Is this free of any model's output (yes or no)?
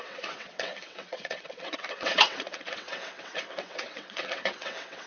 no